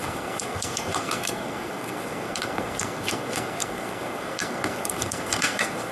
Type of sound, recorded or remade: remade